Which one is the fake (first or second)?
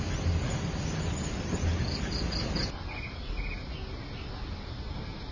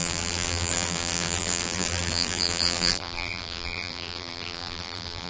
second